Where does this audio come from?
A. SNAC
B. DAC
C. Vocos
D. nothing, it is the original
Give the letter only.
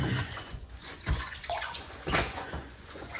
C